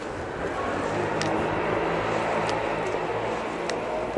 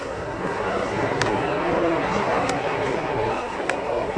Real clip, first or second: first